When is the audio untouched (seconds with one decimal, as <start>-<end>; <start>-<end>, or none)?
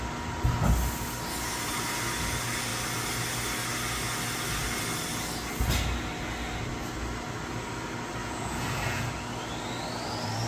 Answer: 0.0-8.2; 9.1-10.5